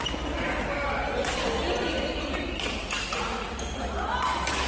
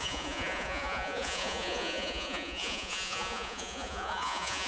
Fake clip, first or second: second